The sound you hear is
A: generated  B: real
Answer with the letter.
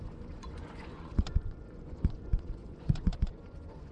A